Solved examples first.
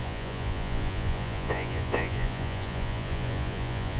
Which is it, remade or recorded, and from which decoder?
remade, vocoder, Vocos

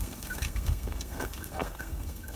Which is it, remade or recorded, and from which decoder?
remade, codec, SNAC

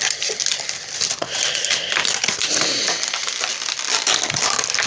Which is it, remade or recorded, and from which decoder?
remade, vocoder, BigVGAN v2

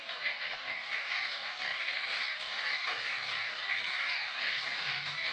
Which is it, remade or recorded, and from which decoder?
remade, codec, DAC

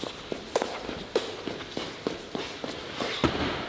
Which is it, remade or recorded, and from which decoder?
recorded